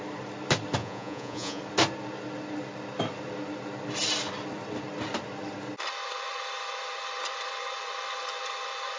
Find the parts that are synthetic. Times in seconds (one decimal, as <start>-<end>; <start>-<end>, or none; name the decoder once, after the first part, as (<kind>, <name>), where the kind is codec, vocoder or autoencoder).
0.8-1.6 (vocoder, Vocos)